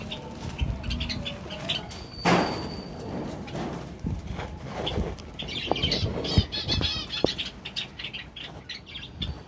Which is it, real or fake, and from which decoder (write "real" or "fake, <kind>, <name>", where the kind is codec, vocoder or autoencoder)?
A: real